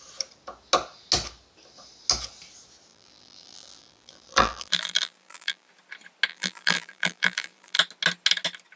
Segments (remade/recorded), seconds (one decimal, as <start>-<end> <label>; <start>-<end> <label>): 0.0-2.9 recorded; 2.9-5.7 remade; 5.7-6.3 recorded; 6.3-7.8 remade; 7.8-8.8 recorded